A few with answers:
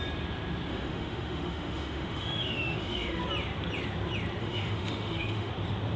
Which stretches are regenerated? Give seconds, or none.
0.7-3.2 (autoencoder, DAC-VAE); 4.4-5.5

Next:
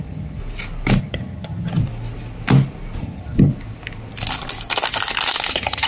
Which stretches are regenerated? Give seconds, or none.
0.0-0.4 (vocoder, HiFi-GAN); 1.0-1.8; 3.0-3.5; 5.5-5.9

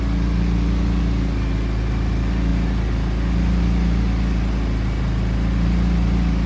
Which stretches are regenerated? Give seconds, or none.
none

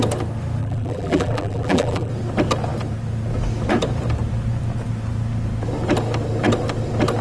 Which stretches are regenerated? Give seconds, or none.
0.6-2.1 (vocoder, BigVGAN v2)

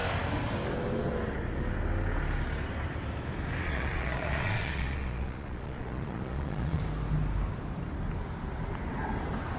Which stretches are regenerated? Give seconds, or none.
3.6-6.8 (vocoder, Vocos)

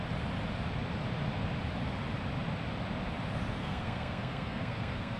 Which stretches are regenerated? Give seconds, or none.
3.6-5.2 (codec, SNAC)

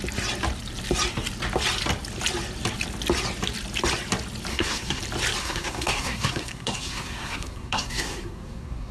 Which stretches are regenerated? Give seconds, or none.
4.5-5.0 (codec, SNAC); 5.4-8.9